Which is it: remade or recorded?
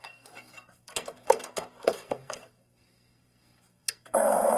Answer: remade